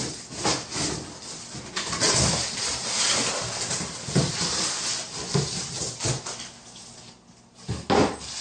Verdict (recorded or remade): recorded